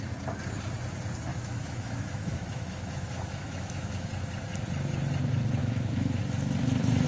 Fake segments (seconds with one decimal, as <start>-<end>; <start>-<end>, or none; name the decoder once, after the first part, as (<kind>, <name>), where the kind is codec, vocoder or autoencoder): 1.3-4.1 (autoencoder, DAC-VAE); 5.6-6.2